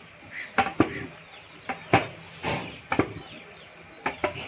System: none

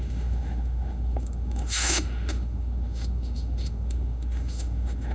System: autoencoder, DAC-VAE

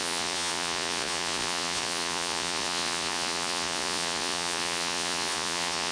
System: vocoder, Vocos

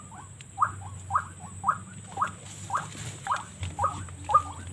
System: none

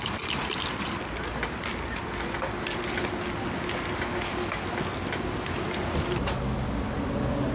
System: none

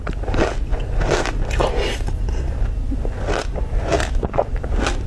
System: none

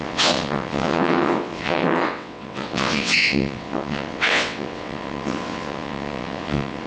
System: vocoder, WaveNeXt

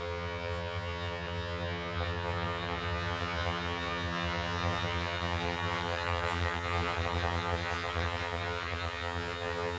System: vocoder, HiFi-GAN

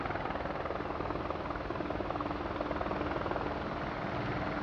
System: none